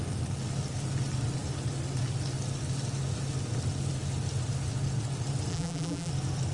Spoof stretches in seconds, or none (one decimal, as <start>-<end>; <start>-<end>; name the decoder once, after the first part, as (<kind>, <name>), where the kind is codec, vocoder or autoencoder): 5.5-6.1 (vocoder, BigVGAN v2)